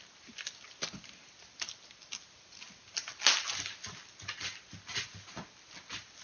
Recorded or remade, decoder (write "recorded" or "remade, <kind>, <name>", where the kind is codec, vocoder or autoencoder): recorded